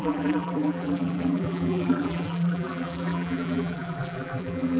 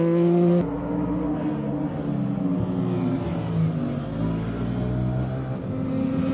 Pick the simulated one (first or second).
first